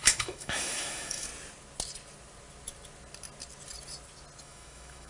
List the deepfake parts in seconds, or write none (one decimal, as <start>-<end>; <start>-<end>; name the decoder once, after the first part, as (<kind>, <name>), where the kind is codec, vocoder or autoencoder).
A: 0.0-1.3 (autoencoder, DAC-VAE); 4.4-5.1